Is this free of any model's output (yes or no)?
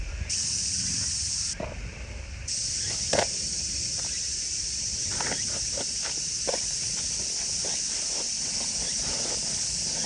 yes